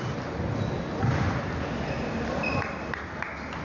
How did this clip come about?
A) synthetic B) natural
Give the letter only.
B